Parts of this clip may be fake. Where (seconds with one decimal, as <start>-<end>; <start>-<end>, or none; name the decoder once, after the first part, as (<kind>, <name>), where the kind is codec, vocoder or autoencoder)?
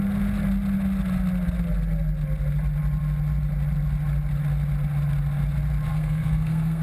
5.9-6.8 (codec, SNAC)